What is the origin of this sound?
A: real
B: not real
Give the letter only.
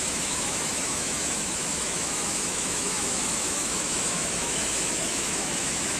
B